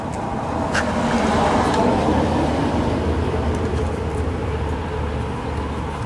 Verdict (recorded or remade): recorded